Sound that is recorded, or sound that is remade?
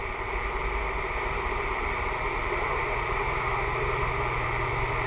recorded